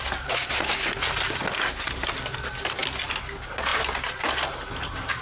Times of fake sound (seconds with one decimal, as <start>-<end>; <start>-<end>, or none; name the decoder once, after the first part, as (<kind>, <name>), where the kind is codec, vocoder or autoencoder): 0.0-2.8 (vocoder, BigVGAN v2); 3.3-5.2